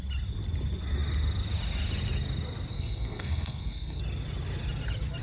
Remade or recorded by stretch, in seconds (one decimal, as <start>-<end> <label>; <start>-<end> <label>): 0.0-2.7 recorded; 2.7-4.0 remade; 4.0-5.2 recorded